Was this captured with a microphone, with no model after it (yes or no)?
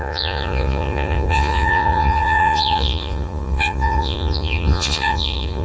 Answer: no